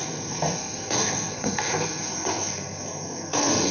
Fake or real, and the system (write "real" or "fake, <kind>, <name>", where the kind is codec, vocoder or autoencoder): fake, codec, SNAC